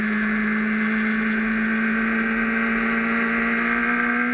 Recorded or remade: recorded